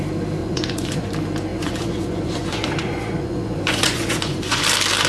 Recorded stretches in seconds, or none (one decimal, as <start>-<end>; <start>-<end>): 0.0-0.4; 1.1-1.5; 4.6-5.1